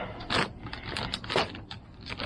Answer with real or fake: real